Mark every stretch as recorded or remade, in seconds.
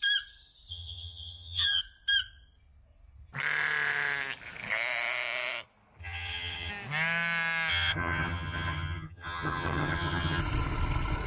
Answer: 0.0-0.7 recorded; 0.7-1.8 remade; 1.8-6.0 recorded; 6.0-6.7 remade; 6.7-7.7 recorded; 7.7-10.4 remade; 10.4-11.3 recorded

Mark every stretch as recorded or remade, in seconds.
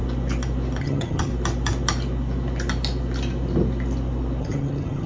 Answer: 0.0-0.8 recorded; 0.8-1.3 remade; 1.3-4.4 recorded; 4.4-5.1 remade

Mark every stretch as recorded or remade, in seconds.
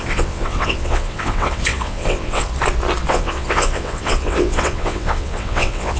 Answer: 0.0-2.5 remade; 2.5-3.1 recorded; 3.1-6.0 remade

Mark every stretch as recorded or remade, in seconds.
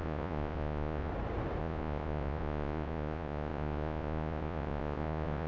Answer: 0.0-1.1 remade; 1.1-1.6 recorded; 1.6-5.5 remade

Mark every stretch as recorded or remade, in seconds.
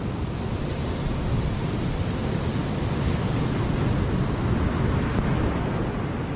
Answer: 0.0-0.7 recorded; 0.7-1.8 remade; 1.8-6.4 recorded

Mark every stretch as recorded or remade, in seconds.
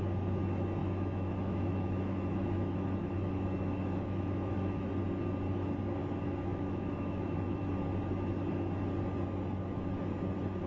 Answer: 0.0-0.8 recorded; 0.8-4.9 remade; 4.9-6.0 recorded; 6.0-7.6 remade; 7.6-10.7 recorded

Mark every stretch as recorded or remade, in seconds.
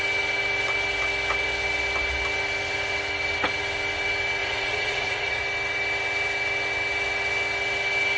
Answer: 0.0-4.4 recorded; 4.4-5.4 remade; 5.4-8.2 recorded